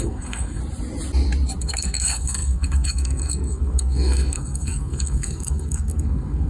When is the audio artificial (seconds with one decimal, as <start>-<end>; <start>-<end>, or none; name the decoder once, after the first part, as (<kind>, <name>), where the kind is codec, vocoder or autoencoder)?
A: 0.0-0.6 (codec, SNAC); 1.6-6.5